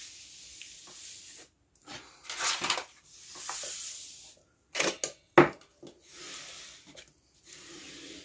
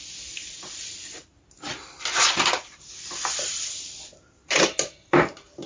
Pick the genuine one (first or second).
first